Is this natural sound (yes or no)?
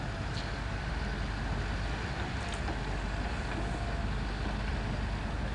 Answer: yes